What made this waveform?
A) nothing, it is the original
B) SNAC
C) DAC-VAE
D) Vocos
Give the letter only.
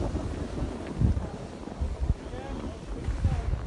A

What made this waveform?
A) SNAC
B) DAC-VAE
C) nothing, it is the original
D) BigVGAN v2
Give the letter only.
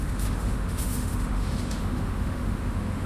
B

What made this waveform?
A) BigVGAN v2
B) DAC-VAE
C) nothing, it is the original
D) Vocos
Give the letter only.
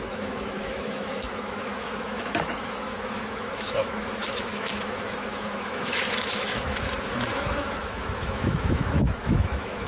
B